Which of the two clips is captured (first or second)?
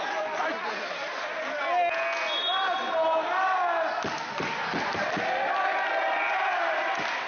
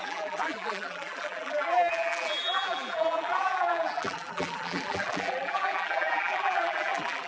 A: first